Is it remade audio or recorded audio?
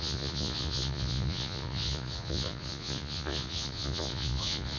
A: remade